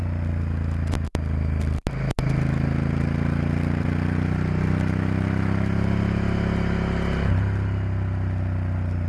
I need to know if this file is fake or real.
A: real